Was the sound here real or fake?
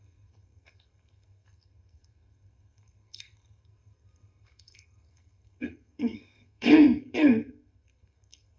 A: fake